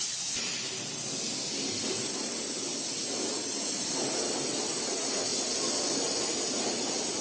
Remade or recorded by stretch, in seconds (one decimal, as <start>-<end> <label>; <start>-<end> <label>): 0.0-7.2 recorded